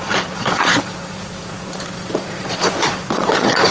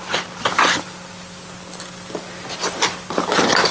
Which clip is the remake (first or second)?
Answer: first